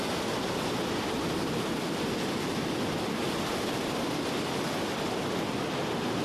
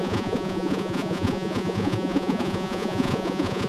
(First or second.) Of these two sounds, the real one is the first